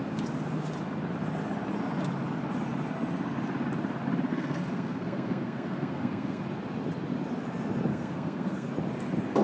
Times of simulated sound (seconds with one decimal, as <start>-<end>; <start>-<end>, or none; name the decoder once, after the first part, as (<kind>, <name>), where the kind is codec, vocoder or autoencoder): 4.3-6.4 (codec, SNAC); 7.9-8.7